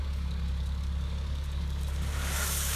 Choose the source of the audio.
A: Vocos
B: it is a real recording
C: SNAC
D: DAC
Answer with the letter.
D